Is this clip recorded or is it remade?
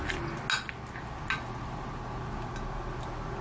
recorded